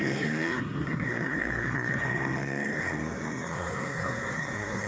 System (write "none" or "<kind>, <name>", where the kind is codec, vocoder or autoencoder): codec, SNAC